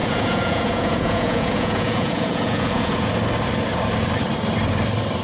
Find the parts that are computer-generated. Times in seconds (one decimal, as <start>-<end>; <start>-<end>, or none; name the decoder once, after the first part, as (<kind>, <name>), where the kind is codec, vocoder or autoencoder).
0.0-3.1 (vocoder, Vocos)